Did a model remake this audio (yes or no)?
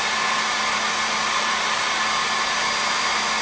no